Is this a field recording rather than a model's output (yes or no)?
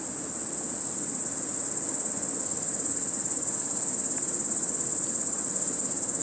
yes